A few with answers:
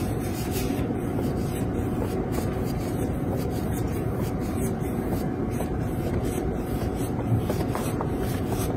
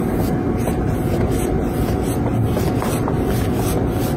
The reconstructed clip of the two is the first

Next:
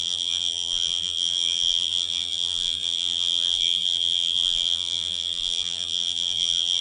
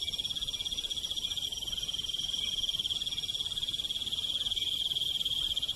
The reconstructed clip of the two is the first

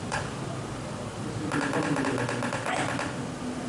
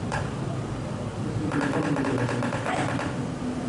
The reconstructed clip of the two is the second